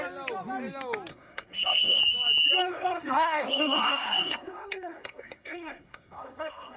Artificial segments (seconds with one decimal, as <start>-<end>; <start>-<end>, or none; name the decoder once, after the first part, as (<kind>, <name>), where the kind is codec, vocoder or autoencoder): 1.1-2.0 (codec, SNAC); 2.6-6.8

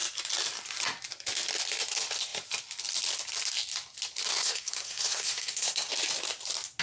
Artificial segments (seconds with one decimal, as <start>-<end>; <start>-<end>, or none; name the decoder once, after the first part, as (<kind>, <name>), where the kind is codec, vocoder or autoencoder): 4.3-5.9 (codec, SNAC)